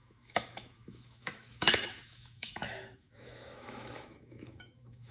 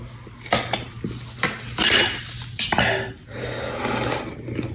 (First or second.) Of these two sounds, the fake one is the first